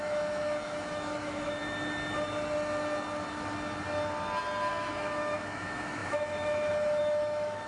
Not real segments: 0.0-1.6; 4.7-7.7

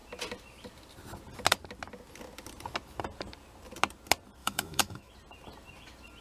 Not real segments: 4.4-5.1

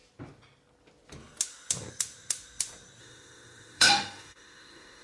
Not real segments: 3.0-5.0